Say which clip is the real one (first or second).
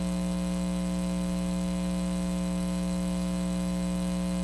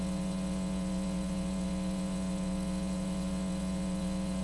first